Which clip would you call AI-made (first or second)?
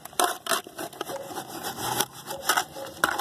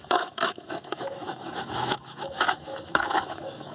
second